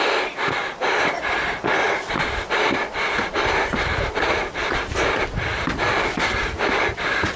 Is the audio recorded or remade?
recorded